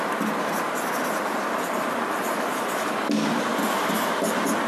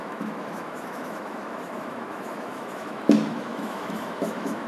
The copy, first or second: second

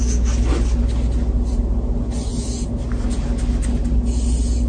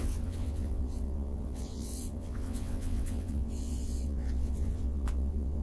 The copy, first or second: second